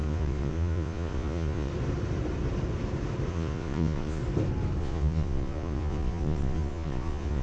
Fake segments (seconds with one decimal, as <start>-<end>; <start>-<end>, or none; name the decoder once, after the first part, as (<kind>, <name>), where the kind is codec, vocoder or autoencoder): 0.0-1.7 (vocoder, Vocos); 3.3-4.2; 4.8-7.4